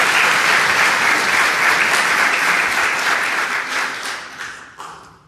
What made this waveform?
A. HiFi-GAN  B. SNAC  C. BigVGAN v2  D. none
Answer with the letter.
C